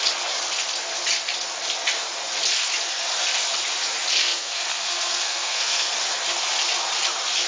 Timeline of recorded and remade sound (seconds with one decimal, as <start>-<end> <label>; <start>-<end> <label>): 0.0-4.2 recorded; 4.2-5.9 remade; 5.9-7.5 recorded